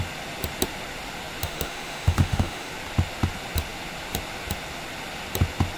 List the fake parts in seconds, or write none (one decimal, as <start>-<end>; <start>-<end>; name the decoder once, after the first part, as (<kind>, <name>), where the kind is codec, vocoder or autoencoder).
1.4-2.7 (autoencoder, DAC-VAE)

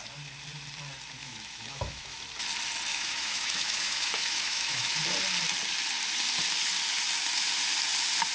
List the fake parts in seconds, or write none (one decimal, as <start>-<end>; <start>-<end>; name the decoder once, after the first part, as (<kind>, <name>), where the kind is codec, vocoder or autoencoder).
1.2-2.2 (autoencoder, DAC-VAE); 2.9-5.0